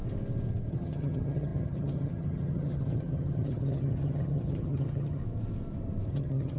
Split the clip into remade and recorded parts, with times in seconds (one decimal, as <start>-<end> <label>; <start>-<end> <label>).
0.0-0.7 recorded; 0.7-5.2 remade; 5.2-6.1 recorded; 6.1-6.6 remade